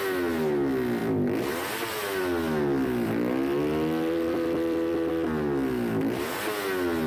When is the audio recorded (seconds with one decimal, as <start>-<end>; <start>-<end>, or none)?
0.0-1.0; 5.1-7.1